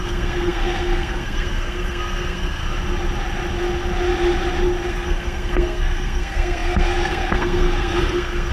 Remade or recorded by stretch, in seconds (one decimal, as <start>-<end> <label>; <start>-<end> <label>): 0.0-2.6 remade; 2.6-4.9 recorded; 4.9-8.5 remade